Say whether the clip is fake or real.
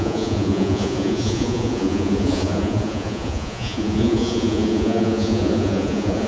fake